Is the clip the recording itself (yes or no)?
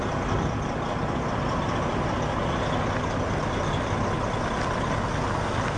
yes